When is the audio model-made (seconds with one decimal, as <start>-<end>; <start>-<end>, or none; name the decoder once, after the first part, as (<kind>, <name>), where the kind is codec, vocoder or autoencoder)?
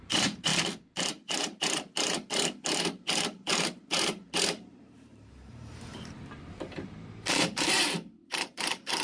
0.0-0.5 (vocoder, BigVGAN v2); 1.1-9.0